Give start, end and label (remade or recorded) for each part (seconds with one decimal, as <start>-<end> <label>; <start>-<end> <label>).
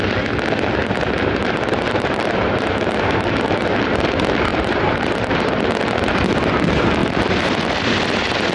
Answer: 0.0-0.8 recorded; 0.8-3.8 remade; 3.8-4.5 recorded; 4.5-5.6 remade; 5.6-7.0 recorded; 7.0-8.5 remade